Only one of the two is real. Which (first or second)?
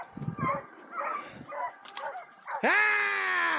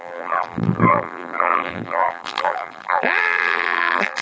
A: first